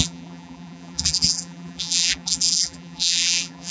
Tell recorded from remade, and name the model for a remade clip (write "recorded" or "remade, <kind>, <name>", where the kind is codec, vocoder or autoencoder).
remade, vocoder, BigVGAN v2